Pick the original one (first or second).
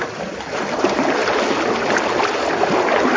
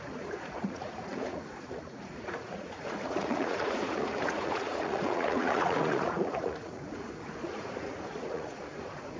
first